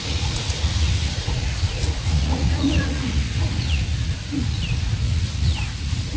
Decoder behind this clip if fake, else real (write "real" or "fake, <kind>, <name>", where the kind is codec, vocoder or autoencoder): fake, vocoder, Vocos